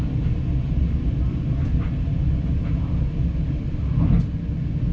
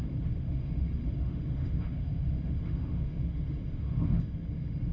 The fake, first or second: second